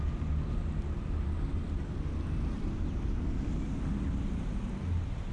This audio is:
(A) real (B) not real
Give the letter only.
A